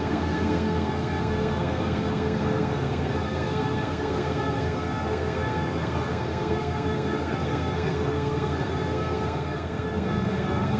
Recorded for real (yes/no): no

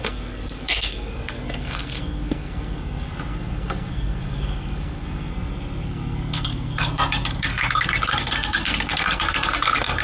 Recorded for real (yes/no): no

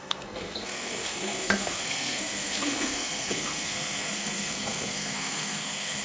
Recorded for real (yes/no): no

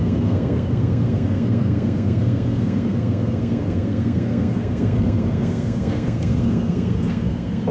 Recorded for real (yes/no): no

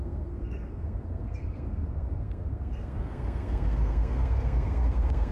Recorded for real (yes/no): no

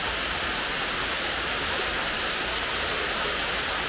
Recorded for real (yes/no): yes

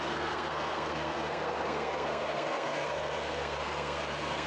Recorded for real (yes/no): no